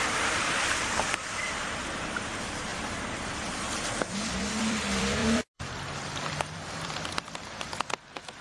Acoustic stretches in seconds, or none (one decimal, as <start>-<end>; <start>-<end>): 2.7-4.1